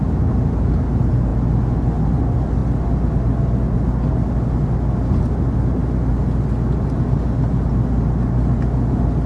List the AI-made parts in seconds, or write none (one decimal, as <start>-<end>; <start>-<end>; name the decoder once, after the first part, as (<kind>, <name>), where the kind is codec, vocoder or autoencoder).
none